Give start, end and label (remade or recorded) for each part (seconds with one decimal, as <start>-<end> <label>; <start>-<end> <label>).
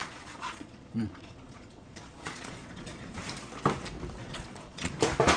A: 0.0-3.2 remade; 3.2-4.2 recorded; 4.2-4.9 remade; 4.9-5.4 recorded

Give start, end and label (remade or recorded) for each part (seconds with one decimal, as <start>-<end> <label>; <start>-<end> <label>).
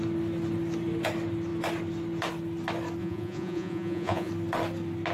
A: 0.0-3.0 recorded; 3.0-4.3 remade; 4.3-5.1 recorded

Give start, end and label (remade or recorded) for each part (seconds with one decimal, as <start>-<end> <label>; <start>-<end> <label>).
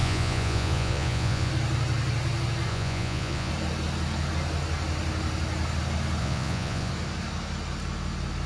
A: 0.0-1.5 remade; 1.5-2.7 recorded; 2.7-3.5 remade; 3.5-6.2 recorded; 6.2-6.9 remade; 6.9-8.5 recorded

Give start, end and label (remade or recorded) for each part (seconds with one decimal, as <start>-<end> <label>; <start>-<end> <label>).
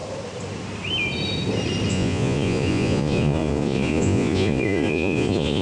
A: 0.0-1.9 recorded; 1.9-5.6 remade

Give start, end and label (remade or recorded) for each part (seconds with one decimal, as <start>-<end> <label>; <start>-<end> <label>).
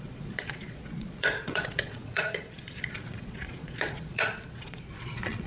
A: 0.0-5.5 remade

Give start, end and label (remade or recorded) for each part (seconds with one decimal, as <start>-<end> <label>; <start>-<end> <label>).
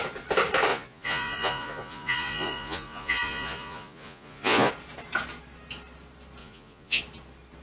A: 0.0-0.7 recorded; 0.7-4.7 remade; 4.7-6.4 recorded; 6.4-7.0 remade; 7.0-7.6 recorded